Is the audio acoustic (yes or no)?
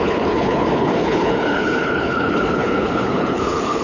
no